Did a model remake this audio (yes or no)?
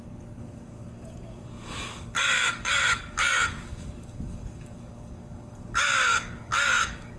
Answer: yes